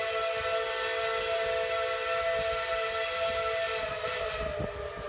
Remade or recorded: recorded